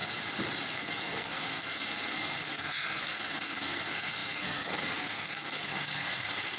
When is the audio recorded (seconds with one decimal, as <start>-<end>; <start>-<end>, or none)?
0.0-0.7